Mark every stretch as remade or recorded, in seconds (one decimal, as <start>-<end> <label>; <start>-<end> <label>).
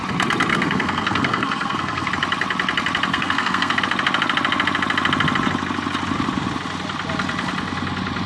0.0-0.5 recorded; 0.5-2.1 remade; 2.1-3.1 recorded; 3.1-3.8 remade; 3.8-8.3 recorded